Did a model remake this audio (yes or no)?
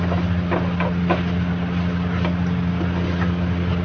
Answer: no